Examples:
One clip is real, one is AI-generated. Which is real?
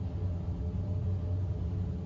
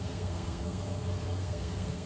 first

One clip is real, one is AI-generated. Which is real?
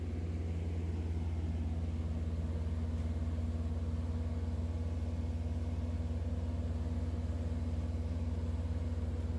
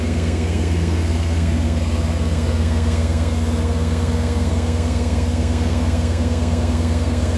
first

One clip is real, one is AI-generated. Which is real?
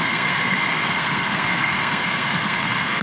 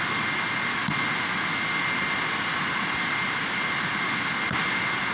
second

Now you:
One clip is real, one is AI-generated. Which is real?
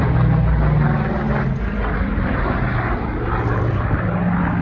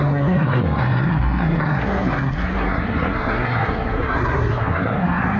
first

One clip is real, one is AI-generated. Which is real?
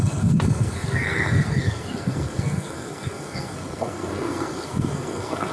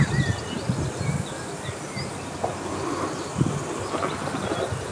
second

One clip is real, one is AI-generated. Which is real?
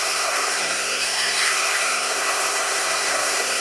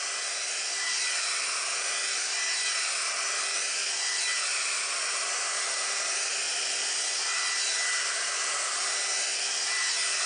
second